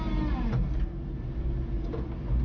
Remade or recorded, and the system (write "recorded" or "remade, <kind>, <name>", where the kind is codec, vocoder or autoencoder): recorded